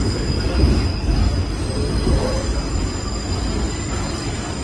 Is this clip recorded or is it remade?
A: recorded